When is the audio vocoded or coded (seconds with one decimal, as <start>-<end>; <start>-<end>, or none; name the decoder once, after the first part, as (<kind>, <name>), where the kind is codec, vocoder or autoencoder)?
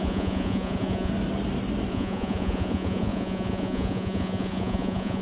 0.0-1.1 (vocoder, Vocos); 1.9-5.2